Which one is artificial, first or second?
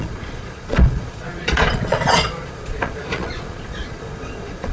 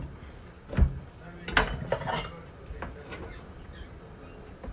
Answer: first